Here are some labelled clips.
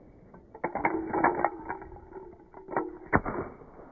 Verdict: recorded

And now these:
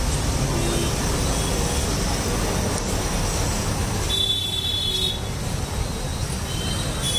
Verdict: recorded